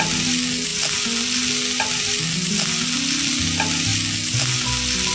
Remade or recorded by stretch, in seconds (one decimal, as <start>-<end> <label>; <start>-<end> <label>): 0.0-5.1 recorded